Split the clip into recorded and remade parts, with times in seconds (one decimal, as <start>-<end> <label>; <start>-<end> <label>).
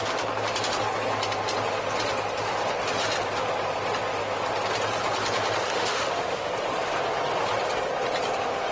0.0-5.6 recorded; 5.6-6.5 remade; 6.5-8.7 recorded